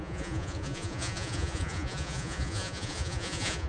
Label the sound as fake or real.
fake